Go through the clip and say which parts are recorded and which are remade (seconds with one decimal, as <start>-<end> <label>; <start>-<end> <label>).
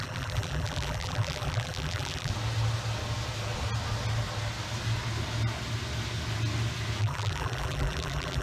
0.0-2.3 remade; 2.3-7.0 recorded; 7.0-8.4 remade